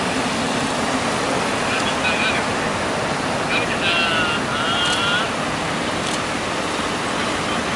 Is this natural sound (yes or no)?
yes